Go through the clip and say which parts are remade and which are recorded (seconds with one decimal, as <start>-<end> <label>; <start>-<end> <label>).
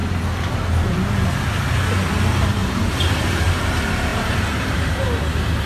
0.0-2.6 recorded; 2.6-3.4 remade; 3.4-4.1 recorded; 4.1-4.8 remade; 4.8-5.7 recorded